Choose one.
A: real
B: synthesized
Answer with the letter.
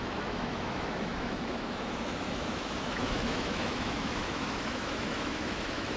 B